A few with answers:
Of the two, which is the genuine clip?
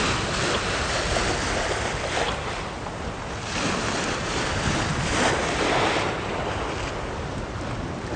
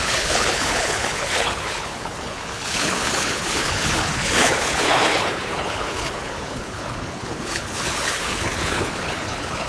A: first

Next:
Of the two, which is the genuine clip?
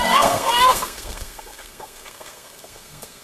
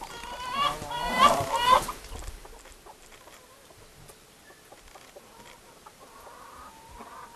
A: second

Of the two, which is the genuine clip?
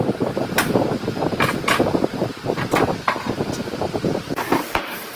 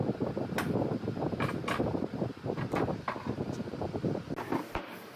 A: second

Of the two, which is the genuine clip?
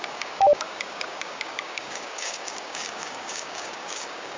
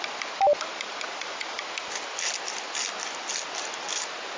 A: second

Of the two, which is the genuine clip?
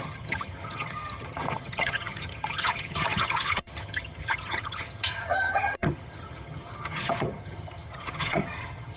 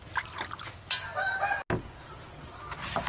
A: second